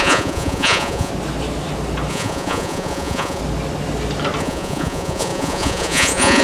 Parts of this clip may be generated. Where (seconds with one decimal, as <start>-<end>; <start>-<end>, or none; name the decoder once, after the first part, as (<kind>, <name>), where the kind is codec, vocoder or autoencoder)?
0.0-1.1 (vocoder, Vocos); 2.1-3.4; 4.4-6.4